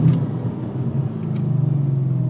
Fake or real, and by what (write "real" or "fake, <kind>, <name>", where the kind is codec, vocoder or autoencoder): real